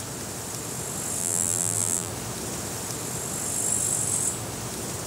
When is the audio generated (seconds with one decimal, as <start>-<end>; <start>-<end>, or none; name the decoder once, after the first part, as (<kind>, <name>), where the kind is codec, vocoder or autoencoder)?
1.2-2.1 (vocoder, BigVGAN v2)